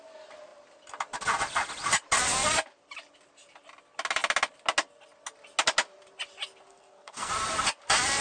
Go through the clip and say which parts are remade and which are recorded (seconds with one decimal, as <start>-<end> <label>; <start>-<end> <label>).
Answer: 0.0-6.7 recorded; 6.7-7.3 remade; 7.3-8.2 recorded